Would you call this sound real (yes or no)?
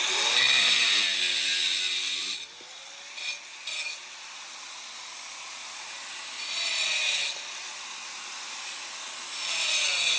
yes